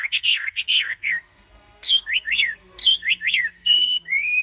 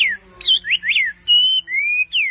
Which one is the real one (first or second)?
second